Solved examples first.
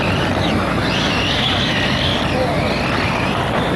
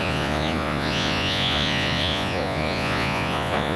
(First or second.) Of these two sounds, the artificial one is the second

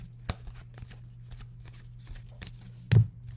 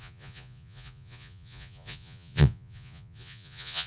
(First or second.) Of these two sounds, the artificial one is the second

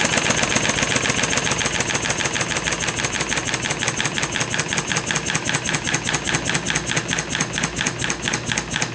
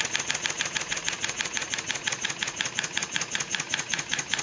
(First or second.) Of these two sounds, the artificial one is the second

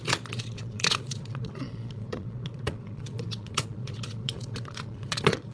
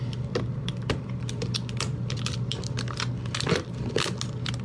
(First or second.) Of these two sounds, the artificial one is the first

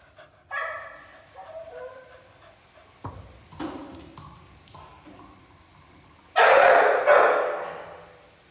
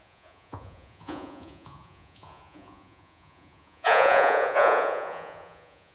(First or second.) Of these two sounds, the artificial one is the second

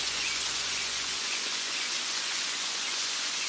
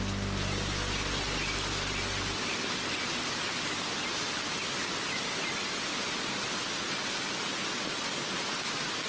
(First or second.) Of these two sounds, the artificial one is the first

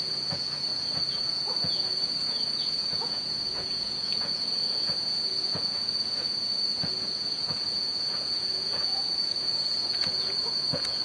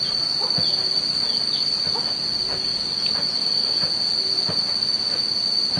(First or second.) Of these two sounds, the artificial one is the first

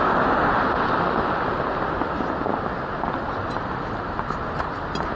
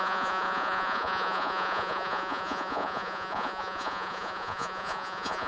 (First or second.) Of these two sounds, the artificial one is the second